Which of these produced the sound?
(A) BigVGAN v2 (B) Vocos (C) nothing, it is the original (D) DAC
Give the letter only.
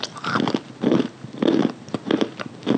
C